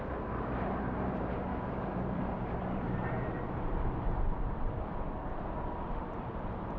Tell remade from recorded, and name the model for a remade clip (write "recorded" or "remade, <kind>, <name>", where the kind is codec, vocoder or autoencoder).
remade, vocoder, BigVGAN v2